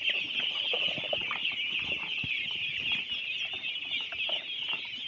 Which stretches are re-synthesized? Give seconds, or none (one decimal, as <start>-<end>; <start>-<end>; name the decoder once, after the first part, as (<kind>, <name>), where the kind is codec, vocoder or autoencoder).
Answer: none